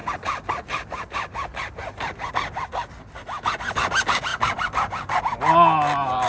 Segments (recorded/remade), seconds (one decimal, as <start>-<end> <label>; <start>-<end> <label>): 0.0-2.3 remade; 2.3-4.3 recorded; 4.3-5.2 remade; 5.2-6.3 recorded